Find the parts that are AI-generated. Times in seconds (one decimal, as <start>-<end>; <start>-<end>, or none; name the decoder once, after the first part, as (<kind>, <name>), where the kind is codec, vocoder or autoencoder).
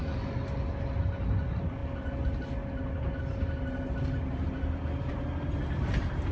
none